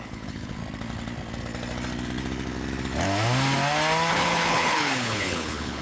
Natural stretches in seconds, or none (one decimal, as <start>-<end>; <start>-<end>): 0.6-4.1

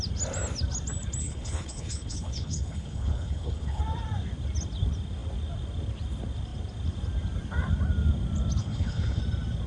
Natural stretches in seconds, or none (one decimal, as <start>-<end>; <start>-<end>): 0.0-1.2; 3.8-8.6; 9.2-9.7